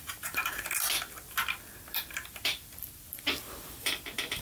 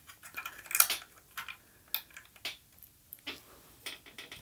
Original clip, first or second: second